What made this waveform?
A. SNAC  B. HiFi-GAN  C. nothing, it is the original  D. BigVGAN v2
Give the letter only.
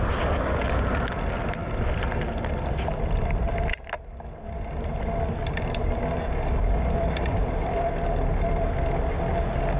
C